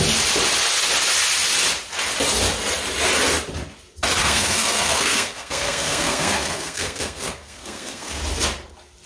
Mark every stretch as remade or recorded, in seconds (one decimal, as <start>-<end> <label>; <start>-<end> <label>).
0.0-4.2 recorded; 4.2-8.2 remade; 8.2-9.1 recorded